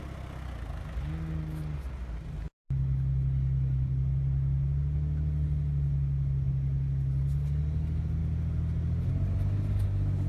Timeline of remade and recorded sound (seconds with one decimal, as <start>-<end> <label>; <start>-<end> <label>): 0.0-10.3 recorded